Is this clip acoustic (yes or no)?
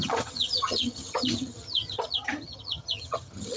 no